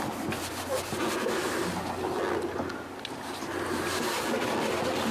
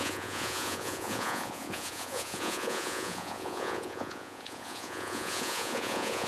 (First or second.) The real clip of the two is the first